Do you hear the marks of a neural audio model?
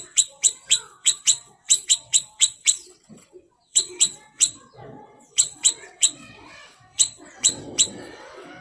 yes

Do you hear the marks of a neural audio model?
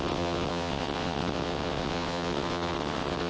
yes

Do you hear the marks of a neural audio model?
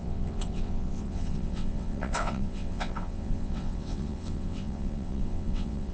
yes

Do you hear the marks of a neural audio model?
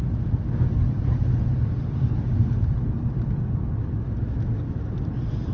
no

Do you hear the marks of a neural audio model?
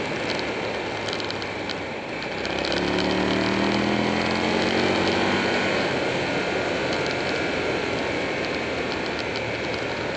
no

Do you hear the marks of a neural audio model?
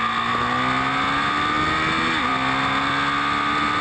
no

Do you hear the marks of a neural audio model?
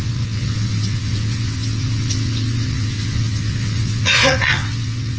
yes